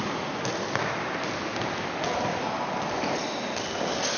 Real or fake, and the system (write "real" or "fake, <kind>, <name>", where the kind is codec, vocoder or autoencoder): real